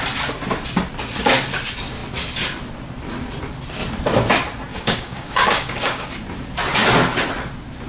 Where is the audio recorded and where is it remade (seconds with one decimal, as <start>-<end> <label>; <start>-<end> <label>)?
0.0-4.7 recorded; 4.7-6.1 remade; 6.1-7.9 recorded